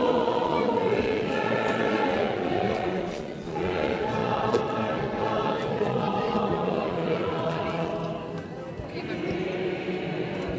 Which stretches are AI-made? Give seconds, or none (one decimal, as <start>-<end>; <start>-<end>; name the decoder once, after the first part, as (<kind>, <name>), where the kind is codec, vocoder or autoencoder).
0.0-7.9 (vocoder, Vocos)